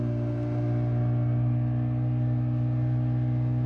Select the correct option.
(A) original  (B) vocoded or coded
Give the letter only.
A